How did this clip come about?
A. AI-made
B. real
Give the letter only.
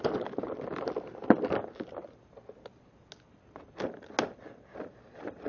B